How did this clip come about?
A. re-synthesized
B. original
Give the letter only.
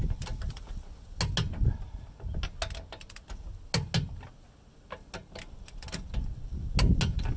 B